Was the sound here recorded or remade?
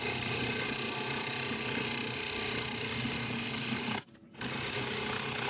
recorded